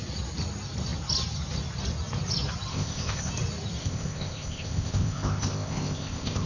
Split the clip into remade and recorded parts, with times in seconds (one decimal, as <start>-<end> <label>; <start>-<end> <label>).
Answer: 0.0-2.7 recorded; 2.7-3.3 remade; 3.3-3.8 recorded; 3.8-6.5 remade